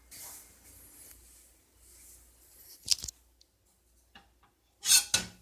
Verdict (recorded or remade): recorded